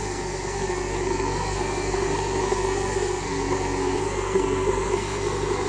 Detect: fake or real fake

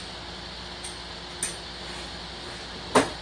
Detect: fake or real real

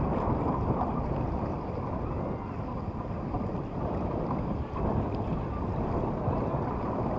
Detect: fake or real fake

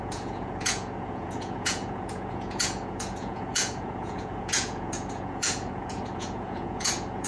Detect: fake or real fake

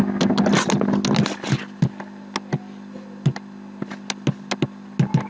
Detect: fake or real real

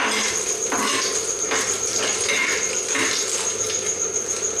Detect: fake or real real